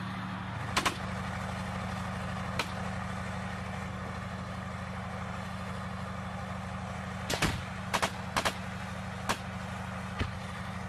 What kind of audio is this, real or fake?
real